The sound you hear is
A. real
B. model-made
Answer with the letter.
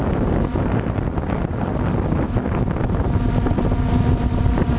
B